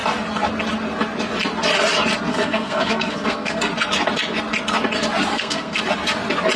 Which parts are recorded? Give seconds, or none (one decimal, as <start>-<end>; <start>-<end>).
0.0-2.3; 3.7-5.3; 5.8-6.6